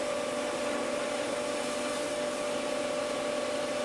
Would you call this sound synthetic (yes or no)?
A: no